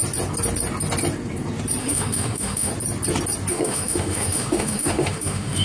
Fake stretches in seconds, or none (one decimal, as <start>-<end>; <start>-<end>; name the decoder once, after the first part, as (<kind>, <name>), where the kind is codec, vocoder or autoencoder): 1.8-2.7 (autoencoder, DAC-VAE); 3.5-5.6